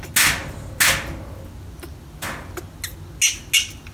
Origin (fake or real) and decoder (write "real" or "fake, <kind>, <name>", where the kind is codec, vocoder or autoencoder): real